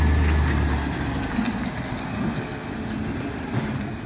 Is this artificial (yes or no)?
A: no